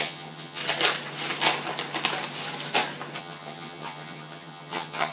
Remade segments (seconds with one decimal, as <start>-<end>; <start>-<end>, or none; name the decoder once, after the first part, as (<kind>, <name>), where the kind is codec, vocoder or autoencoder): 0.0-0.6 (vocoder, HiFi-GAN); 3.2-5.1